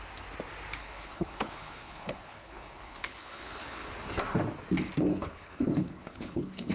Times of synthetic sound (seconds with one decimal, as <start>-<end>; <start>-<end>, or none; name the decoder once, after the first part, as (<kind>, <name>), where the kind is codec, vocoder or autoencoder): 0.8-3.9 (codec, HILCodec); 5.1-6.7